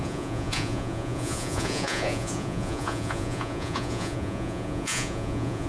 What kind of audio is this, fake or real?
fake